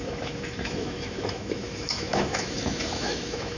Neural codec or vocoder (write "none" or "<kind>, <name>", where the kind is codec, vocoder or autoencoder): autoencoder, DAC-VAE